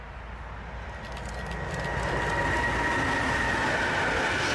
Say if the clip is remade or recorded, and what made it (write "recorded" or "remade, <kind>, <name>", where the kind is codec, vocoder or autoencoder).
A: recorded